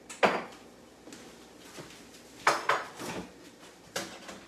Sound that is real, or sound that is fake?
real